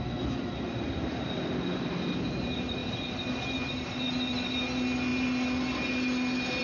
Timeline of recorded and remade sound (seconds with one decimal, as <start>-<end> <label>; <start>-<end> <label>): 0.0-6.6 recorded